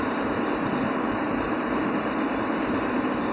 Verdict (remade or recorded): recorded